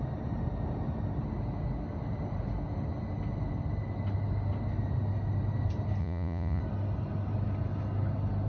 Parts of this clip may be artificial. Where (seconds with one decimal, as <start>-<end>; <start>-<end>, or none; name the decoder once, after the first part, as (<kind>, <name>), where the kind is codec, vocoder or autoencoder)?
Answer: 6.0-6.6 (vocoder, Vocos)